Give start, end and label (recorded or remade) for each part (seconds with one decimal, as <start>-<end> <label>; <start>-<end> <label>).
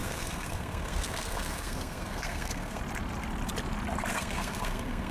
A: 0.0-2.8 remade; 2.8-4.1 recorded; 4.1-5.1 remade